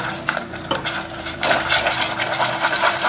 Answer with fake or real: fake